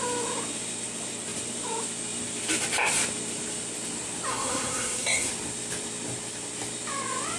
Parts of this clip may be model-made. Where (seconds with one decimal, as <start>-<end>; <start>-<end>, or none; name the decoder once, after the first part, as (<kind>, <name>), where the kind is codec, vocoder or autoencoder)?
4.3-5.3 (codec, SNAC)